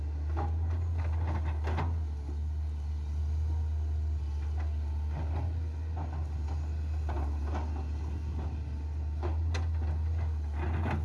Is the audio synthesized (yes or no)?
no